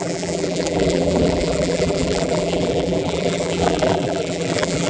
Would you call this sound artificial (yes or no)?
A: yes